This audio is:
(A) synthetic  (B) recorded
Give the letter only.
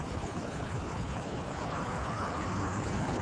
A